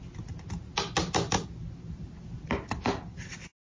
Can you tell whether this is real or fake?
real